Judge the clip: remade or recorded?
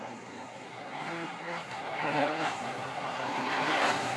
remade